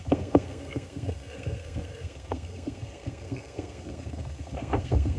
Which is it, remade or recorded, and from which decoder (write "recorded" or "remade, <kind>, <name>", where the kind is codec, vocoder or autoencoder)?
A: remade, codec, SNAC